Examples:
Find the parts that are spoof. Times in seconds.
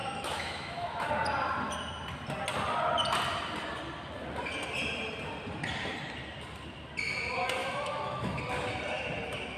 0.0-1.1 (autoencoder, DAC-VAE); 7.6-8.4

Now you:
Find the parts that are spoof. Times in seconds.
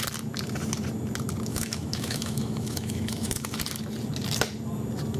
1.5-3.6 (autoencoder, DAC-VAE)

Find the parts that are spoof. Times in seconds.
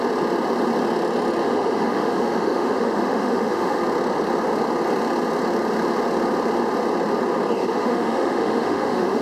1.4-3.8 (autoencoder, DAC-VAE); 7.6-9.2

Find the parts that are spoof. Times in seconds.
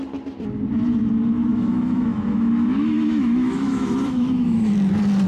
1.5-4.7 (autoencoder, DAC-VAE)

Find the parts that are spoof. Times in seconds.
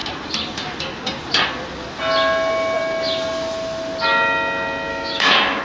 4.9-5.6 (autoencoder, DAC-VAE)